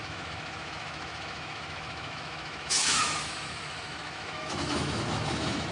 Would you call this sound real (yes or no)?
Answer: no